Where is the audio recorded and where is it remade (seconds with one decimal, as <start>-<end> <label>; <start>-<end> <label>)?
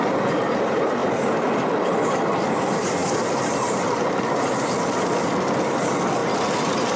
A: 0.0-7.0 recorded